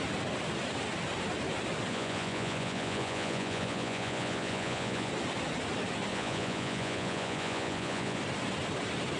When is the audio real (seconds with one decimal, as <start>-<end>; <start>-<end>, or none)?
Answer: 0.0-1.9; 5.1-6.1; 8.2-9.2

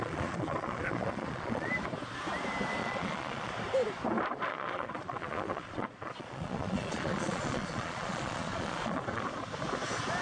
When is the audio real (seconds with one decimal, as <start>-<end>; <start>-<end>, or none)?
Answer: 1.7-2.8; 3.5-4.5; 9.2-10.2

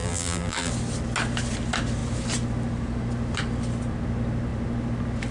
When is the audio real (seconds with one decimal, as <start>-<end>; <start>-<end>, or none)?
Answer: 0.7-5.3

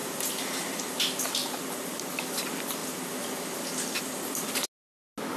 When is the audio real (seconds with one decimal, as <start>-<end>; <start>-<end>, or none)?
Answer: 0.8-1.4; 2.1-5.4

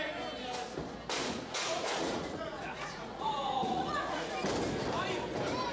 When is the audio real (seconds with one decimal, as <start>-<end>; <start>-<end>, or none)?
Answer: 0.0-1.2; 4.3-5.7